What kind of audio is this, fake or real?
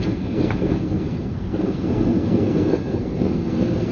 fake